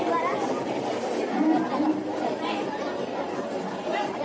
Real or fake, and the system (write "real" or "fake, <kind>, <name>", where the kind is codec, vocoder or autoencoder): real